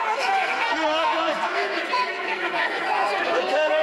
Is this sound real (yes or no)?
no